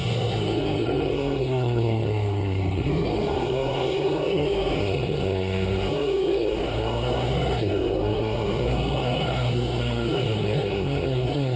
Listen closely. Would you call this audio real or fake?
fake